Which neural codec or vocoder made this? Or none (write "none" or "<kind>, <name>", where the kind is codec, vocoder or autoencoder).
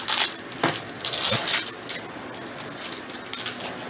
none